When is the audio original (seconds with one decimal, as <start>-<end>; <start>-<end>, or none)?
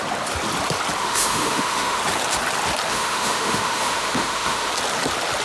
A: 0.0-1.0; 2.0-2.9; 4.7-5.4